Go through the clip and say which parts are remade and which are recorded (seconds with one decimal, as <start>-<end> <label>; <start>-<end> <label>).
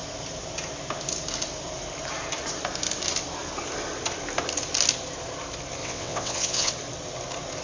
0.0-5.8 recorded; 5.8-6.7 remade; 6.7-7.6 recorded